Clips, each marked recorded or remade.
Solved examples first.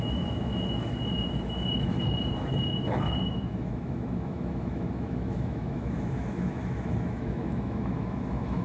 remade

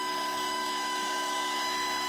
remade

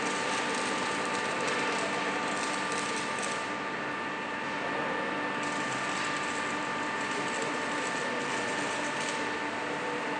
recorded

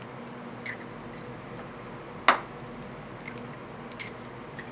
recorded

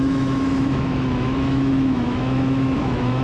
remade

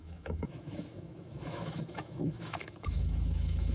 remade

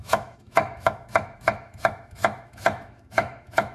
remade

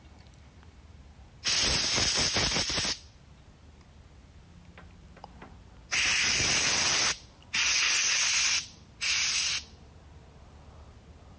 recorded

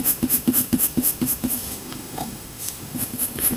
remade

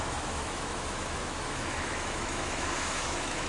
remade